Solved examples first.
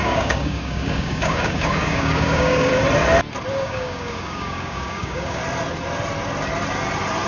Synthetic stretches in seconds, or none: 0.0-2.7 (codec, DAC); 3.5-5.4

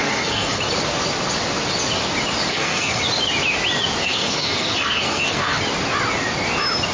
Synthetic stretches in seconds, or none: 0.0-0.6 (codec, SNAC); 2.5-3.0; 4.0-5.6

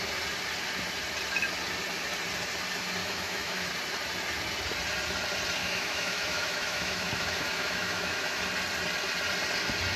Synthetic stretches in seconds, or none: 3.0-3.7 (autoencoder, DAC-VAE); 5.6-8.4

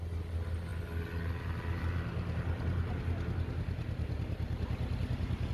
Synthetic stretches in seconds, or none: none

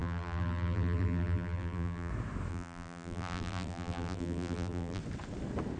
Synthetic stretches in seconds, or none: 0.0-2.1 (vocoder, BigVGAN v2); 2.5-5.0